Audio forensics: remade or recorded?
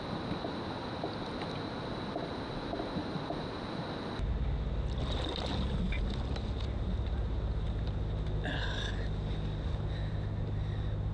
recorded